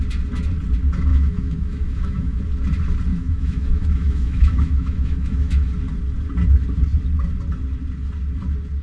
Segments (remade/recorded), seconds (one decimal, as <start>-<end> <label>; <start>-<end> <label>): 0.0-1.1 recorded; 1.1-2.4 remade; 2.4-3.1 recorded; 3.1-5.7 remade; 5.7-8.8 recorded